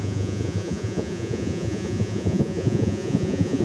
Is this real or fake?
fake